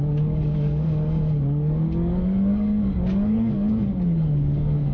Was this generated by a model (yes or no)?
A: yes